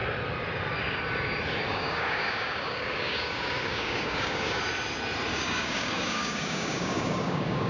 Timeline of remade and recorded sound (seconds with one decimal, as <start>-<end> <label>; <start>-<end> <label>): 0.0-1.7 recorded; 1.7-4.6 remade; 4.6-5.3 recorded; 5.3-7.7 remade